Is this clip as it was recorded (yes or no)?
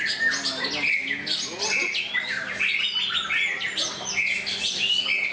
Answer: yes